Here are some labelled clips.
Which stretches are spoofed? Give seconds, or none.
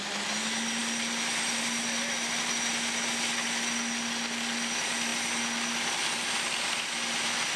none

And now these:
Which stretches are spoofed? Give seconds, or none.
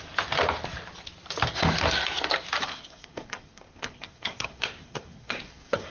2.7-5.9 (codec, SNAC)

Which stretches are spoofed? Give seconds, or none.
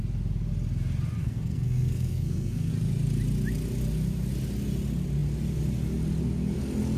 1.2-2.7 (codec, SNAC)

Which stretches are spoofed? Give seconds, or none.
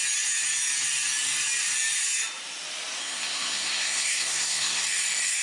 3.0-4.8 (codec, SNAC)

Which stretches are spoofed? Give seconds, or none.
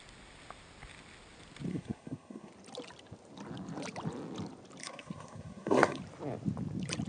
1.7-2.5 (codec, SNAC); 4.8-6.0